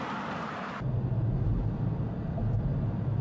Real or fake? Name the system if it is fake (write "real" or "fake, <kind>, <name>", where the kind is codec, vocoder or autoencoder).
real